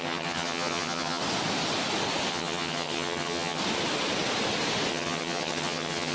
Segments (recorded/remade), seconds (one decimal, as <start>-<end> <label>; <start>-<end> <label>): 0.0-1.2 remade; 1.2-2.3 recorded; 2.3-3.6 remade; 3.6-4.9 recorded; 4.9-6.1 remade